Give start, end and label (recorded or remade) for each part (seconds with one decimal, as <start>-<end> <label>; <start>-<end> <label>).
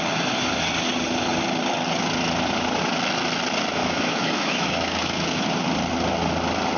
0.0-3.8 recorded; 3.8-5.4 remade; 5.4-6.8 recorded